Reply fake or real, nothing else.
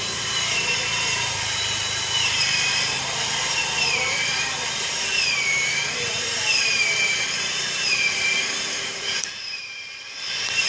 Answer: fake